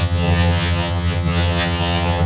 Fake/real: fake